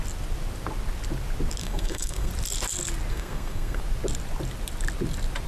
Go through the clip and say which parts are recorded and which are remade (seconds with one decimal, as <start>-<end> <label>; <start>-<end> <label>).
0.0-1.6 recorded; 1.6-2.3 remade; 2.3-3.1 recorded; 3.1-3.8 remade; 3.8-5.5 recorded